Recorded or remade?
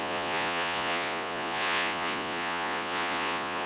remade